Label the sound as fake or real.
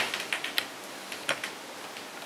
real